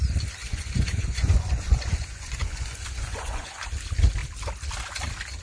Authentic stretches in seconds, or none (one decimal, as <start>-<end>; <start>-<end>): 0.0-0.4; 3.6-5.4